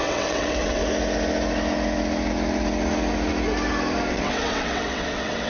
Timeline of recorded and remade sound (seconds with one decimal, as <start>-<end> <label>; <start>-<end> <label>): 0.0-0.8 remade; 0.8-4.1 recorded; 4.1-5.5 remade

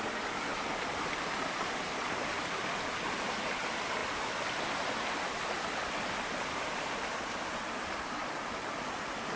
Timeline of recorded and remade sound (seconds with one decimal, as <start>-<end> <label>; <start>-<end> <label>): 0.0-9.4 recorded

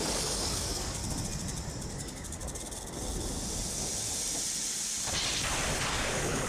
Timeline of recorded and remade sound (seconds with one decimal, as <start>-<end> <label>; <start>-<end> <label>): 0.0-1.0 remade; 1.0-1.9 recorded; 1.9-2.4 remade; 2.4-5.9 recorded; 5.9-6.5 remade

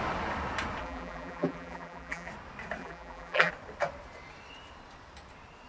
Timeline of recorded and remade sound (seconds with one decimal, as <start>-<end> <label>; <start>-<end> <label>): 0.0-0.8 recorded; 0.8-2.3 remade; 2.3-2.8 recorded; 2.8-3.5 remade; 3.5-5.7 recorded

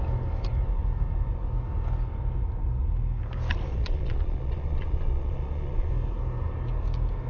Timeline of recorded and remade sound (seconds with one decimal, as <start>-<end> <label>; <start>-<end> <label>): 0.0-3.7 recorded; 3.7-5.9 remade; 5.9-7.3 recorded

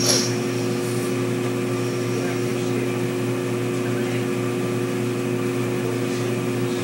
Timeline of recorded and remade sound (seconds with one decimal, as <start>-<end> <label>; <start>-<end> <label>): 0.0-6.8 recorded